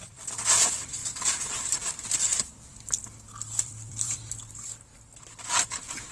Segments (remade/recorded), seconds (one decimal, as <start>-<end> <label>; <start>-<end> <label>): 0.0-1.0 remade; 1.0-3.6 recorded; 3.6-4.9 remade; 4.9-5.6 recorded; 5.6-6.1 remade